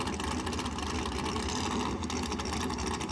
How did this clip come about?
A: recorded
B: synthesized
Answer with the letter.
A